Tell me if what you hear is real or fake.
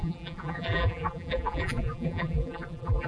fake